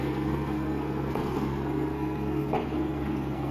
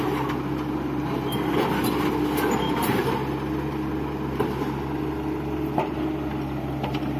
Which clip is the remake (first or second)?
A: first